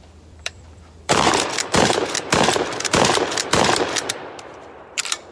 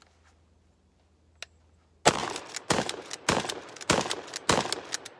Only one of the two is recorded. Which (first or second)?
second